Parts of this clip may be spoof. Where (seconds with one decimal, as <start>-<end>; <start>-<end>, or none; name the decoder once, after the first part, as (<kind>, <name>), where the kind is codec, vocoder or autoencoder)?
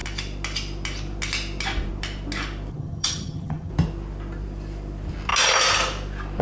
2.7-3.7 (vocoder, HiFi-GAN)